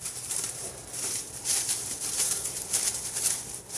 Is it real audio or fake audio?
fake